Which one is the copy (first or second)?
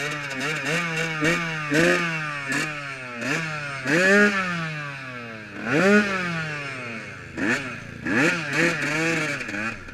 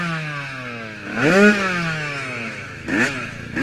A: second